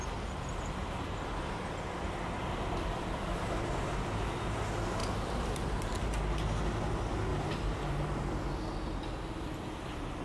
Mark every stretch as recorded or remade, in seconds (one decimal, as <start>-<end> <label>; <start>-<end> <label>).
0.0-5.0 recorded; 5.0-6.1 remade; 6.1-7.3 recorded; 7.3-8.2 remade; 8.2-10.2 recorded